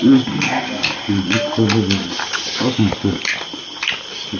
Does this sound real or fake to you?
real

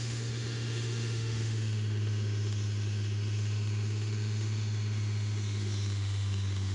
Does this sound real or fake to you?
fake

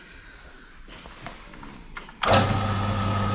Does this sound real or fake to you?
real